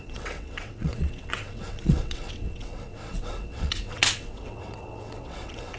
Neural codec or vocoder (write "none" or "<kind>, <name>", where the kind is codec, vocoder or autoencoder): vocoder, WaveNeXt